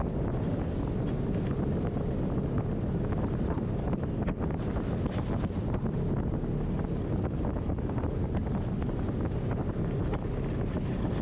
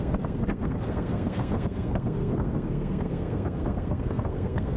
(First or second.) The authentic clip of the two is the first